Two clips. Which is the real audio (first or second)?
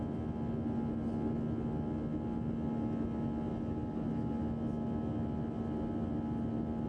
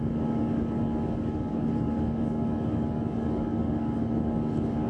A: first